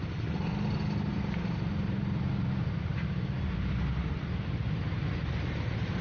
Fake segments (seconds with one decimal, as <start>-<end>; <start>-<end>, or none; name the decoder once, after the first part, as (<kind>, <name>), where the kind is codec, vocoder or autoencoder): 1.1-2.3 (vocoder, BigVGAN v2); 4.0-6.0